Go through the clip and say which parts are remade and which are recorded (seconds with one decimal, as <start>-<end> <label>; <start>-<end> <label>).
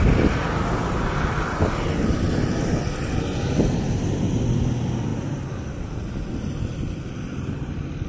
0.0-5.1 recorded; 5.1-6.3 remade; 6.3-8.1 recorded